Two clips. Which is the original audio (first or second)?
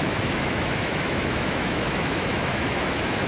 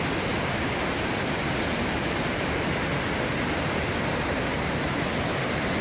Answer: second